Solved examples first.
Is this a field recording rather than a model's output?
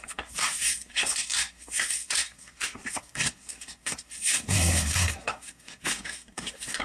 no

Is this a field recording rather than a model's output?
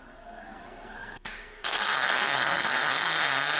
no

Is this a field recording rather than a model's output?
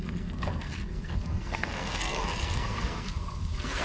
no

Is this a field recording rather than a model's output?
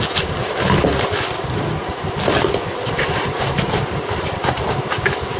yes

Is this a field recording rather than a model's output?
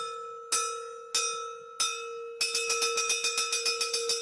yes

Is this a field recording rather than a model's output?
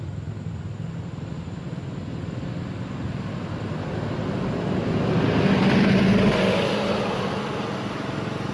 yes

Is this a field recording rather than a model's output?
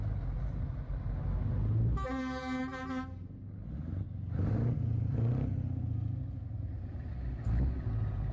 yes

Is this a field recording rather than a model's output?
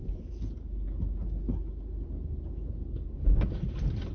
yes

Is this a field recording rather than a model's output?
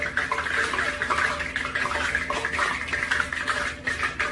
yes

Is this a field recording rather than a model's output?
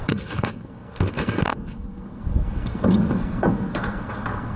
no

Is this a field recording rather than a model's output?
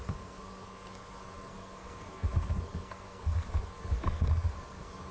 no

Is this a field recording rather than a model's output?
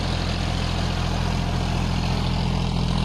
yes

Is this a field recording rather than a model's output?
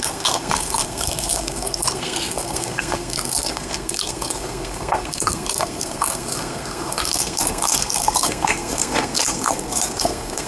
no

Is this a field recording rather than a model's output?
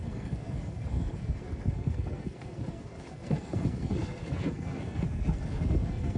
no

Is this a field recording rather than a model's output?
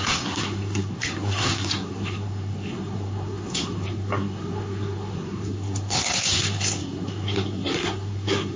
no